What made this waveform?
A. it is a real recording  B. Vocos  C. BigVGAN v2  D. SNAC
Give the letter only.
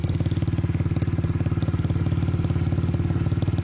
A